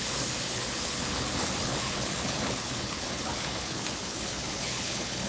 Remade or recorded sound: remade